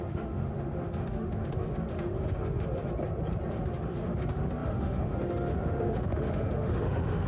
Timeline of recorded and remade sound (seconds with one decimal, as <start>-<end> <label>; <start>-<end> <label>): 0.0-2.9 remade; 2.9-3.5 recorded; 3.5-7.3 remade